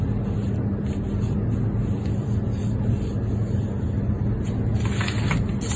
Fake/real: real